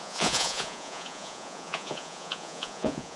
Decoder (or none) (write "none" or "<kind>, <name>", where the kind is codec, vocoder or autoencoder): vocoder, Vocos